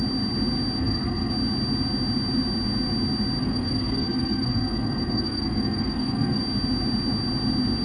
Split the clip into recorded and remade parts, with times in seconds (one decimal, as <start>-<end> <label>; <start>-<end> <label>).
0.0-0.8 recorded; 0.8-1.3 remade; 1.3-3.4 recorded; 3.4-6.4 remade; 6.4-7.8 recorded